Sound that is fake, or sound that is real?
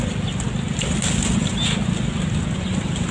real